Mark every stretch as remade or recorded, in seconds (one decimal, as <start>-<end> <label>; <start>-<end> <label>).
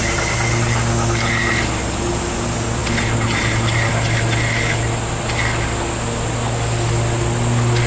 0.0-7.9 recorded